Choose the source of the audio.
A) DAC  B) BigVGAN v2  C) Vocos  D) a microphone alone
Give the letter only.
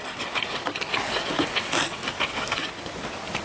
D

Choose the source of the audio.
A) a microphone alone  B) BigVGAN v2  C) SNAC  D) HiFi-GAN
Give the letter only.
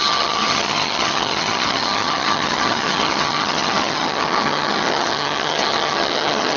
D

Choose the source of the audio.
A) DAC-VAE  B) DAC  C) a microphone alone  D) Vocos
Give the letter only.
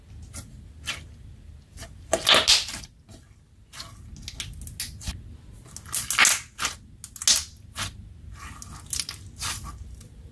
C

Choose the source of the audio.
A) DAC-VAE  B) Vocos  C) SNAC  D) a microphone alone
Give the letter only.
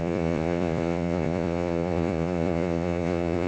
B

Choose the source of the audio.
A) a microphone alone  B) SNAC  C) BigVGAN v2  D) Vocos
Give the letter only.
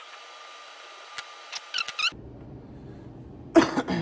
A